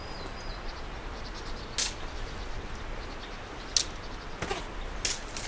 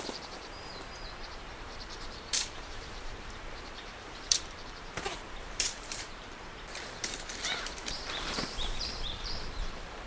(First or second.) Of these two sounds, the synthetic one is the second